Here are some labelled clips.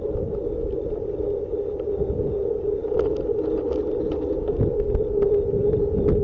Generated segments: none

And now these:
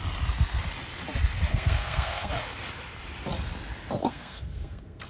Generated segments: 1.5-2.3 (codec, SNAC); 4.0-5.1

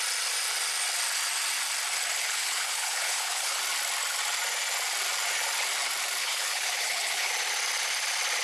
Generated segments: 2.2-3.6 (codec, HILCodec); 6.2-7.3

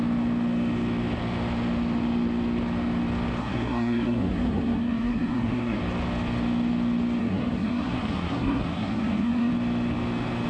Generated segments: 3.4-5.8 (codec, SNAC); 7.2-9.5

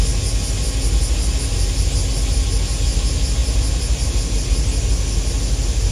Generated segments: none

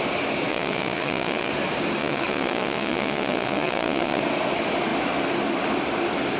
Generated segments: 0.5-1.5 (vocoder, Vocos); 2.0-4.2